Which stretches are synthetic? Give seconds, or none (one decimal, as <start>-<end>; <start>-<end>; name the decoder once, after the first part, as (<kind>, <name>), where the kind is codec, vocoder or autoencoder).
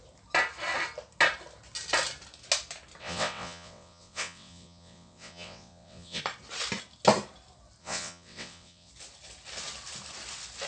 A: 3.0-6.2 (vocoder, WaveNeXt); 7.8-8.9